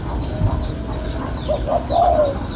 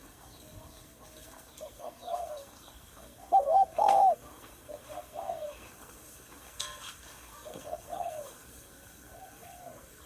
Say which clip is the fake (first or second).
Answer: second